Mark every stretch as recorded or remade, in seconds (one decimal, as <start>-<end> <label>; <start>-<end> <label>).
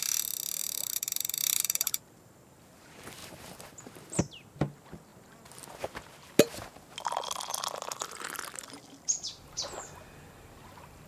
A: 0.0-0.6 recorded; 0.6-2.3 remade; 2.3-3.2 recorded; 3.2-4.2 remade; 4.2-11.1 recorded